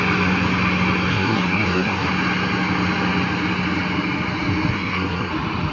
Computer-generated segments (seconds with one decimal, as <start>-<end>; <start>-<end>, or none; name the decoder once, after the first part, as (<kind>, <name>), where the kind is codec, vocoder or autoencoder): 1.1-2.1 (codec, SNAC); 4.7-5.3